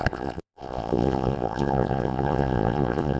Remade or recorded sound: remade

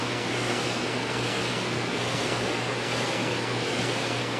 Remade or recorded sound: remade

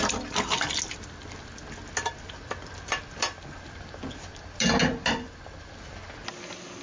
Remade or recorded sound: recorded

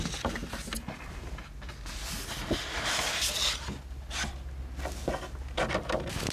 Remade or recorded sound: recorded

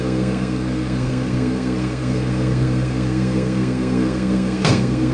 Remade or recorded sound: remade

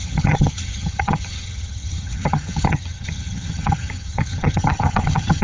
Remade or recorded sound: remade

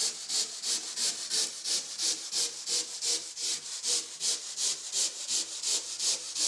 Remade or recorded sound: remade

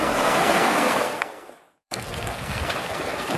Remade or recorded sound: remade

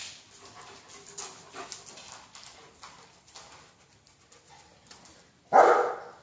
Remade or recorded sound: recorded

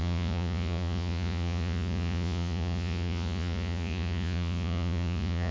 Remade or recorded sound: remade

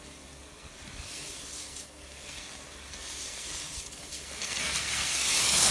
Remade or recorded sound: remade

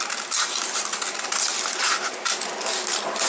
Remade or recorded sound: recorded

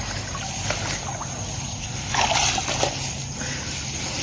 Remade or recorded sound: recorded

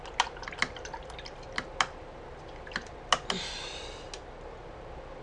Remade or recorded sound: recorded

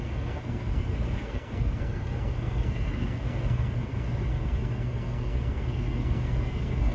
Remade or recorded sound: remade